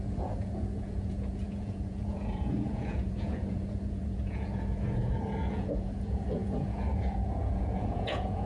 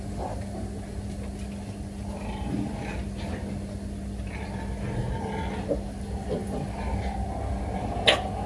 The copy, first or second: first